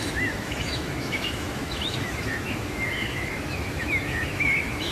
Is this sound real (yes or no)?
no